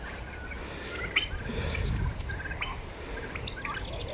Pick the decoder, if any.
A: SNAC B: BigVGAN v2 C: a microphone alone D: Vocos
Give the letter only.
C